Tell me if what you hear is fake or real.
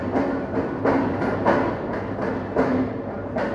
real